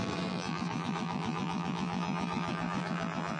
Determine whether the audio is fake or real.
fake